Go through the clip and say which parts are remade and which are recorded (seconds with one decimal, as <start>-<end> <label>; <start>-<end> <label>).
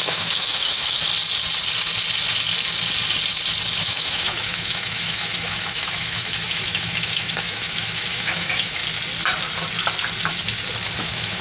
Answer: 0.0-1.1 remade; 1.1-3.8 recorded; 3.8-8.8 remade; 8.8-11.0 recorded; 11.0-11.4 remade